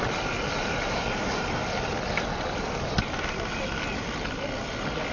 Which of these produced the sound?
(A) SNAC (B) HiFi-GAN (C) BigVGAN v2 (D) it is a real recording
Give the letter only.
D